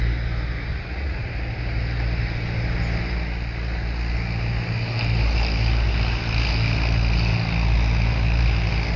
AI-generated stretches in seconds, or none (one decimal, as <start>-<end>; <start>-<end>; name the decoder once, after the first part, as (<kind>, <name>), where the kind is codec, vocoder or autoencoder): 0.7-1.3 (vocoder, Vocos)